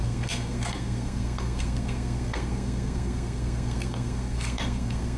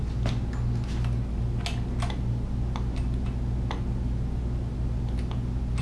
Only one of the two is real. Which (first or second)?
second